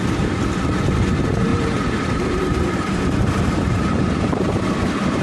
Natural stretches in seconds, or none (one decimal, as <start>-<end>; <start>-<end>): 0.0-1.5; 4.6-5.2